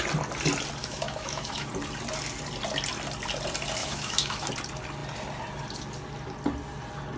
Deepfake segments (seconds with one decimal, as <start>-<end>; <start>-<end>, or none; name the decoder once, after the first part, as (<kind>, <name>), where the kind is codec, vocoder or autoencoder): 0.8-1.7 (autoencoder, DAC-VAE); 3.8-4.5